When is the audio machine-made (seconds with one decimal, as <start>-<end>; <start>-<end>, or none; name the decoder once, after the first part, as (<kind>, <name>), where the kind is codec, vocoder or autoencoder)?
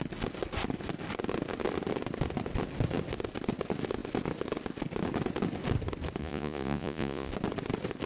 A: 6.2-7.3 (vocoder, Vocos)